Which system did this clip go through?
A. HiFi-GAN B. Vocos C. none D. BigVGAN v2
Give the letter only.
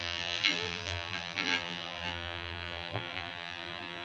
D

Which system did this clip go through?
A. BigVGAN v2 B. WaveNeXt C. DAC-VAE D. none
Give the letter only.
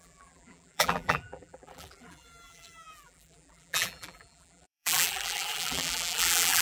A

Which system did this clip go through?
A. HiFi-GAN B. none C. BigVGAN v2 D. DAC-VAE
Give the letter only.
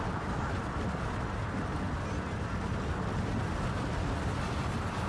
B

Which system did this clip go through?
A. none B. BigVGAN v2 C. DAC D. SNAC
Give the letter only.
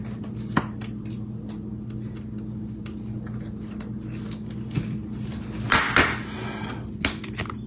A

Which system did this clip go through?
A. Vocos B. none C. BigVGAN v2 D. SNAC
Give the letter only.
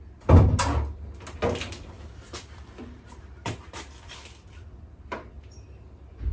B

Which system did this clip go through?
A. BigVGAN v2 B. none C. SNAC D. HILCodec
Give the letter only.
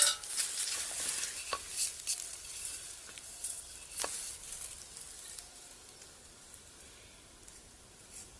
B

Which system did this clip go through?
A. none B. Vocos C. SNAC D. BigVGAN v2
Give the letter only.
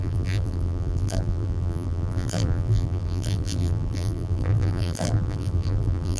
D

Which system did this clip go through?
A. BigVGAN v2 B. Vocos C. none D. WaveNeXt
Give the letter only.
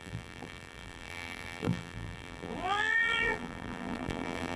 A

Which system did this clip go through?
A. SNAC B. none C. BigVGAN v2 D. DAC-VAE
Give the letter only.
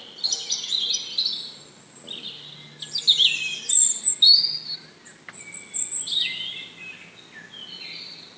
B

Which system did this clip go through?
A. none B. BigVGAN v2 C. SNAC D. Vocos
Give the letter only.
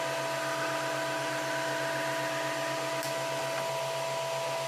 A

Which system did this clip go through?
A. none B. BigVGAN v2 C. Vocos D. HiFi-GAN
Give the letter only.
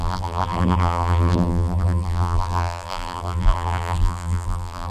B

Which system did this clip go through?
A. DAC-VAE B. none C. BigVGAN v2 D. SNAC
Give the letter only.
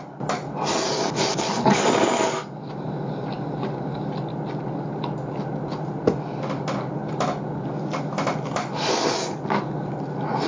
B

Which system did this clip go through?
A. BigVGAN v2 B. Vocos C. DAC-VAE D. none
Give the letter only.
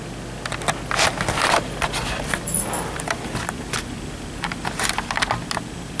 D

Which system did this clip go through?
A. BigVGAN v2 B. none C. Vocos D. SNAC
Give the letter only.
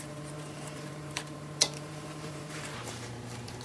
A